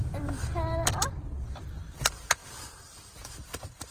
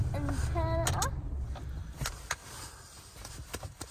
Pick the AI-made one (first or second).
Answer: first